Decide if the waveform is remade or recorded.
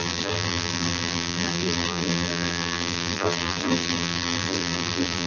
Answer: remade